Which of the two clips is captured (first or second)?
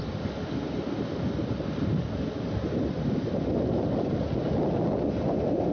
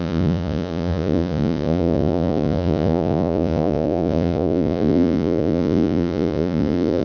first